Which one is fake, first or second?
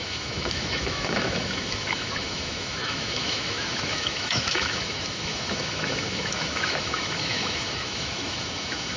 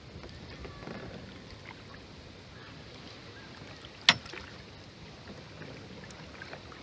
first